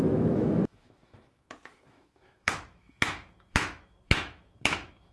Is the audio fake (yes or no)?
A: yes